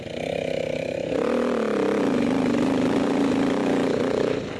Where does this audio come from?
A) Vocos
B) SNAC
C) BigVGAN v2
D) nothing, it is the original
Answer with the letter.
D